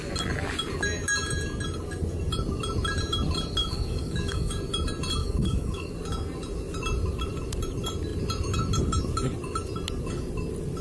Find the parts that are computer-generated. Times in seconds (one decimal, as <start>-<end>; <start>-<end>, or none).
3.6-4.6; 5.2-5.9

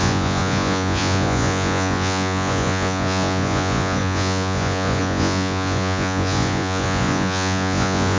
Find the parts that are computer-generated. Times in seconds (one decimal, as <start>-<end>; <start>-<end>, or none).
0.0-8.2

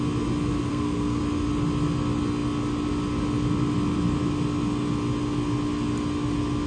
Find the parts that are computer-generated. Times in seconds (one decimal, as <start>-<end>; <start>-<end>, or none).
0.7-1.2

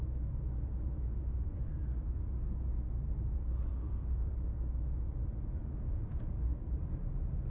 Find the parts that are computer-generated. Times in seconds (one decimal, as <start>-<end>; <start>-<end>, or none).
1.1-1.7; 3.7-4.3

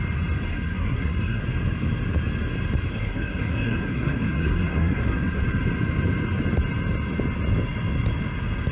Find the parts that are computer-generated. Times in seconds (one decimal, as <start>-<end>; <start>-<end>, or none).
0.5-1.4; 2.9-5.4